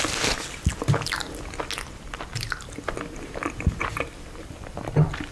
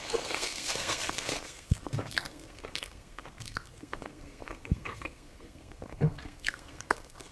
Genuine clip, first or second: first